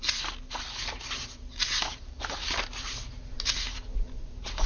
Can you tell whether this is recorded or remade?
recorded